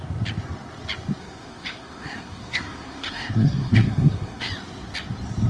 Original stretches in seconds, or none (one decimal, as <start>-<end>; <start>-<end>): 0.0-1.2; 4.5-5.5